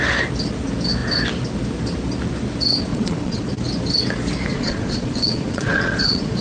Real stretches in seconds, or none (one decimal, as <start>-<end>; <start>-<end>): 0.0-2.9; 3.5-4.5